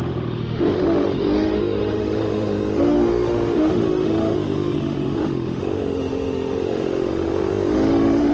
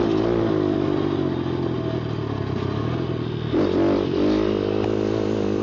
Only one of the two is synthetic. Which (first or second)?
first